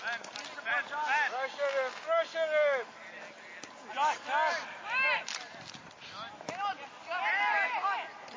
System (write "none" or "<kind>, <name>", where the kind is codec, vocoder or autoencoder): none